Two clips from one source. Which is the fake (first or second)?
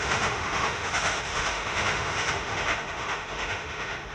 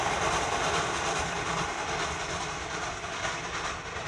first